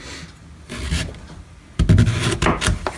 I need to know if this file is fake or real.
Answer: real